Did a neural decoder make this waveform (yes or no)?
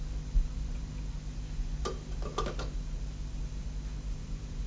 no